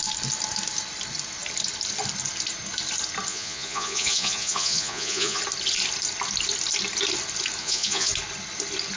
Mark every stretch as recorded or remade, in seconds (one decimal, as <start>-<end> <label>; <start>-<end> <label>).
0.0-3.3 recorded; 3.3-5.4 remade; 5.4-7.6 recorded; 7.6-8.1 remade; 8.1-9.0 recorded